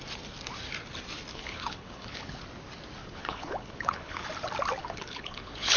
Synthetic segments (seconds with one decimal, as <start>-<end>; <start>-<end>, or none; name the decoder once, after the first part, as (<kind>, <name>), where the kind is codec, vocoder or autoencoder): 1.3-2.4 (codec, HILCodec); 3.0-4.3; 4.8-5.8